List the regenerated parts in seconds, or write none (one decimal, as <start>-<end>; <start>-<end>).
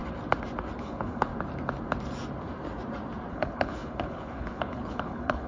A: 0.8-1.3; 3.3-5.5